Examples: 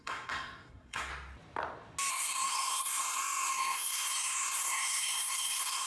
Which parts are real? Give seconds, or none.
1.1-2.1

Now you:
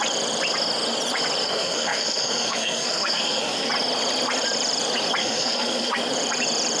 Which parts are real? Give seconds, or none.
0.0-1.4; 3.7-5.2; 6.0-6.8